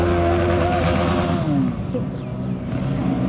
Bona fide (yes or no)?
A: yes